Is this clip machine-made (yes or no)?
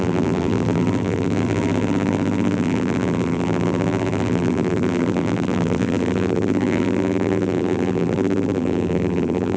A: yes